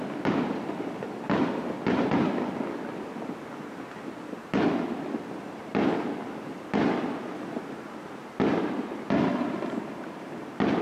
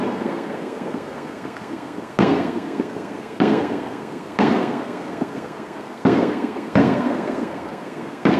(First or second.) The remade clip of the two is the second